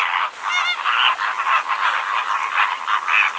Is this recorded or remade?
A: recorded